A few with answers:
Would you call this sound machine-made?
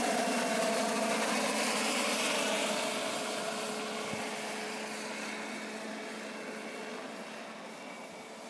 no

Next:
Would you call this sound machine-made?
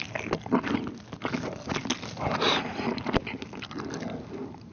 no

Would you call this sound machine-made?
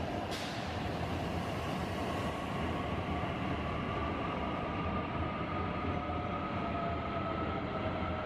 no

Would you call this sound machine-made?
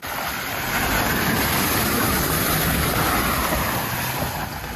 yes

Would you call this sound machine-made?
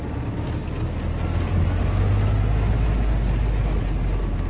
no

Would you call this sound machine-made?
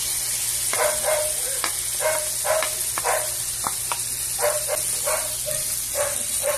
no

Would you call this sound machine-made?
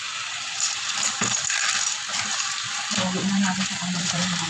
yes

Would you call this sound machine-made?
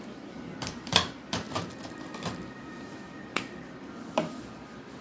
yes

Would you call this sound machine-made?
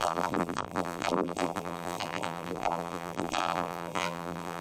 yes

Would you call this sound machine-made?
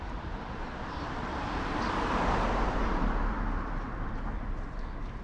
yes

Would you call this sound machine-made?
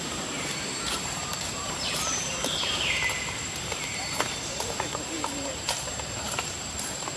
yes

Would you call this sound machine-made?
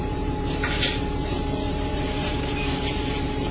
yes